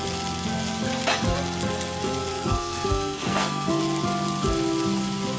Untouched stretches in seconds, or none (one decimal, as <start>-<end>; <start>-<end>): 0.0-2.3; 3.8-5.4